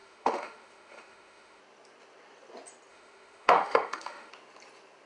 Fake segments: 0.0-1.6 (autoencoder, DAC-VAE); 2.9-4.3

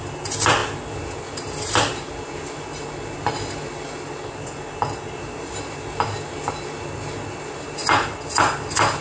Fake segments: none